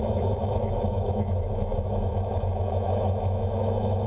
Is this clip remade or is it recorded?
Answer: remade